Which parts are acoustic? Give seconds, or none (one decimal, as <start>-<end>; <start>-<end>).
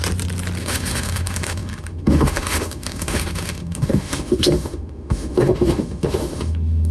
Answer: 0.0-0.6